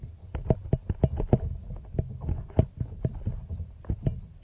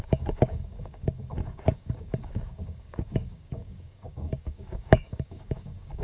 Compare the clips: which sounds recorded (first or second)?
first